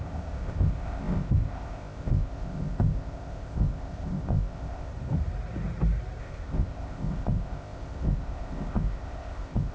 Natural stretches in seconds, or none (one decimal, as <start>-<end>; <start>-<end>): 4.9-6.2